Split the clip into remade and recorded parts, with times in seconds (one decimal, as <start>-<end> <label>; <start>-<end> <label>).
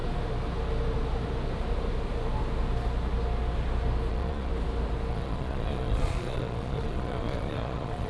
0.0-4.1 recorded; 4.1-4.5 remade; 4.5-5.1 recorded; 5.1-8.1 remade